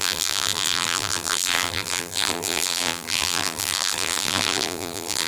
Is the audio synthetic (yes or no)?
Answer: yes